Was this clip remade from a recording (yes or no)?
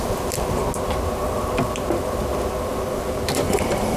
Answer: no